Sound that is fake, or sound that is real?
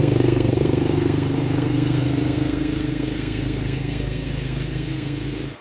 fake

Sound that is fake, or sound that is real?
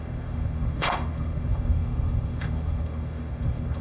fake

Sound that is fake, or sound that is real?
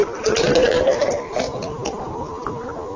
real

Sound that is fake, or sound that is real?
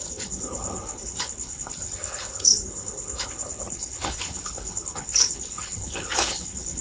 fake